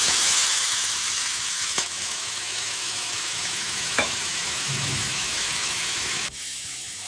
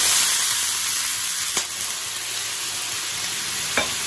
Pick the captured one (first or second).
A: second